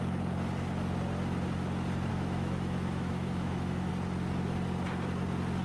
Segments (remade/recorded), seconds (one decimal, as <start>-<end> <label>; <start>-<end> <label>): 0.0-2.1 recorded; 2.1-3.9 remade; 3.9-5.6 recorded